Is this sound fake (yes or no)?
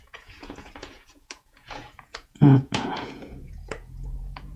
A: yes